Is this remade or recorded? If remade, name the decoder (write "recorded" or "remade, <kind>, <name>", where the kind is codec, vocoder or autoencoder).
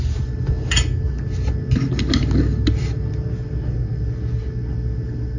recorded